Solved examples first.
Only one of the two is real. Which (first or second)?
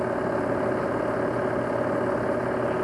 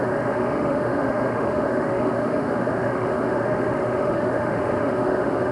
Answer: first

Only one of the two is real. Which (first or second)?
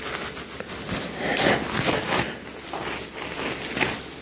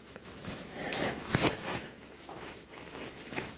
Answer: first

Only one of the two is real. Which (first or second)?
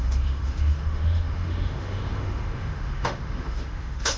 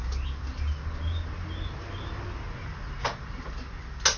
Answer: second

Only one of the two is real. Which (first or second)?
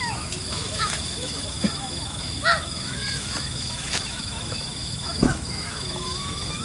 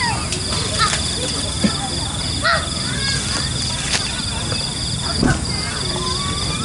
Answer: second